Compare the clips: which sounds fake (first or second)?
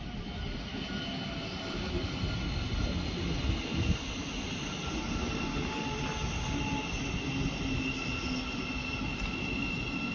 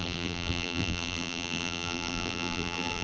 second